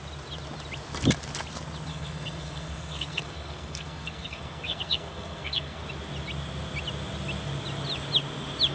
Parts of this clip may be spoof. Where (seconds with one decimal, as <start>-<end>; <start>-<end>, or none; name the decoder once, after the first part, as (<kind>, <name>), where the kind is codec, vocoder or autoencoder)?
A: 1.9-5.8 (codec, SNAC)

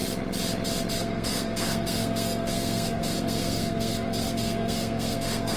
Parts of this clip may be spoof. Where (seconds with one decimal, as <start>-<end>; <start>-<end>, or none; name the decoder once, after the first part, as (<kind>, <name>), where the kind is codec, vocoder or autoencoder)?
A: 0.9-5.6 (codec, SNAC)

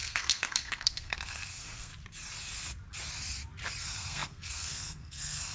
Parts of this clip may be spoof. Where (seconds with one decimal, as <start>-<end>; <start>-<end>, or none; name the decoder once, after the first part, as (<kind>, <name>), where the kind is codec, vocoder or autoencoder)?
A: 0.0-1.9 (codec, SNAC); 3.8-5.5

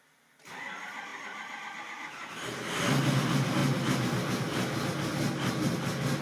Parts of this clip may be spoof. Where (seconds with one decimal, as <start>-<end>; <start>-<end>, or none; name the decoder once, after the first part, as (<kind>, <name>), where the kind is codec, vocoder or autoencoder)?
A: none

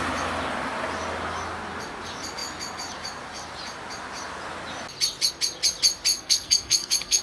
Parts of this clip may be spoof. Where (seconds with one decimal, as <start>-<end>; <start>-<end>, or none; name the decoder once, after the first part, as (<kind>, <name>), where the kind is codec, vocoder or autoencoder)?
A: 6.1-7.2 (codec, SNAC)

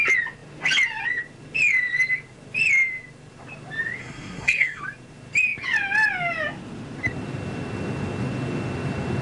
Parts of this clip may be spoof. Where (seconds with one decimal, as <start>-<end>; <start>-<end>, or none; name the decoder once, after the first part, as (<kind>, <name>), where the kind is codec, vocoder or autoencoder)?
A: 4.0-4.8 (codec, SNAC)

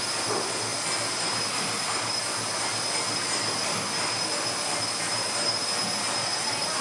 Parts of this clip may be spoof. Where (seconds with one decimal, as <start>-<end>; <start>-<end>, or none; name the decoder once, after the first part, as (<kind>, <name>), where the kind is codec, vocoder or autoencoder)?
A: none

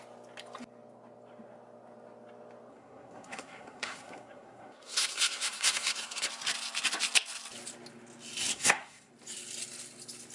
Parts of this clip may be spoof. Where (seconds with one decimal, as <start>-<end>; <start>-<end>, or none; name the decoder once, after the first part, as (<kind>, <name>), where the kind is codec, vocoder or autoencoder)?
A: 2.7-6.3 (codec, SNAC); 8.5-9.1